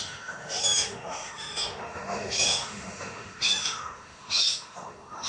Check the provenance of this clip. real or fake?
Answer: fake